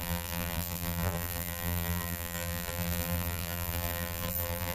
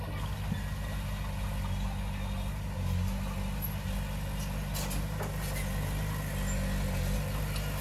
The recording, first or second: second